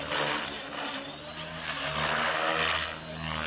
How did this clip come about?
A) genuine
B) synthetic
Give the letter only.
A